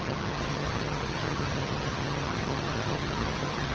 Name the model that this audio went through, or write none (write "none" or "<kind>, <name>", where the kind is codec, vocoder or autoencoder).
vocoder, HiFi-GAN